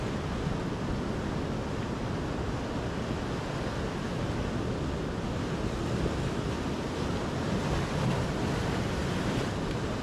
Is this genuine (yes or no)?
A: yes